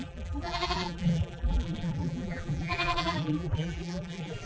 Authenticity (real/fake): fake